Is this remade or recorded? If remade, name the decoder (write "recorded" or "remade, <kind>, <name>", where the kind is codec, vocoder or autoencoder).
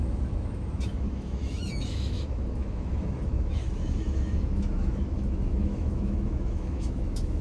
remade, autoencoder, DAC-VAE